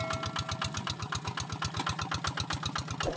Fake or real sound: real